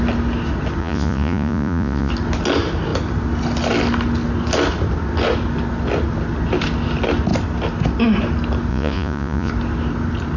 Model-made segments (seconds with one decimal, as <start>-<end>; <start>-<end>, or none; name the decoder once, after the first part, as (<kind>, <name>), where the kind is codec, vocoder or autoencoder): 0.8-2.1 (vocoder, Vocos); 8.7-9.5